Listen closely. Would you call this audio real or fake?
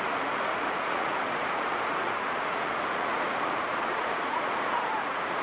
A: fake